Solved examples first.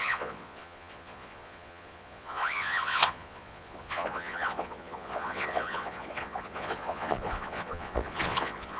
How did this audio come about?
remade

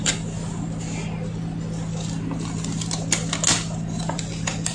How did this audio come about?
recorded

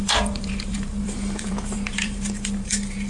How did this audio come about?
remade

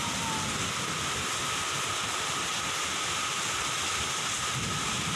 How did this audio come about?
recorded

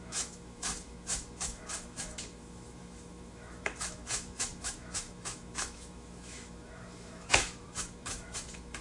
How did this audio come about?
remade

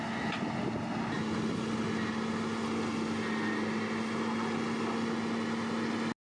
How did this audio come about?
recorded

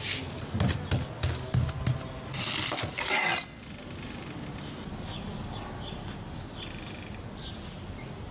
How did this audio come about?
recorded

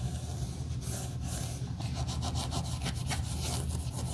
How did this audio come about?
recorded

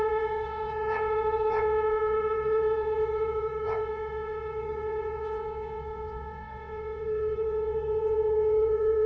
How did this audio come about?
remade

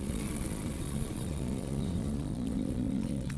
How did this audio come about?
remade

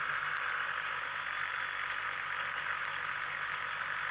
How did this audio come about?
recorded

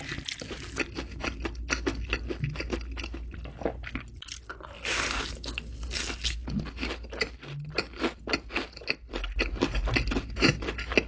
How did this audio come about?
recorded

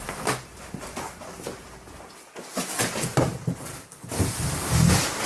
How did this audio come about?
recorded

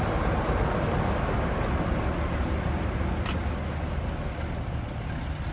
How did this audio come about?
recorded